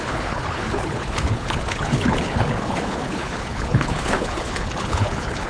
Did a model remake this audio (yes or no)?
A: yes